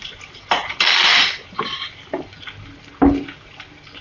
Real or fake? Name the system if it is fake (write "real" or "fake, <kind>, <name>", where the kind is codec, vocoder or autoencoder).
real